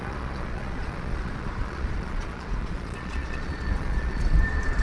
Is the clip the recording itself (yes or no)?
no